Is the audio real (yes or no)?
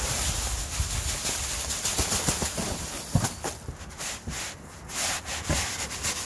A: yes